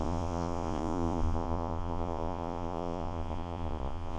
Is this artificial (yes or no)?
yes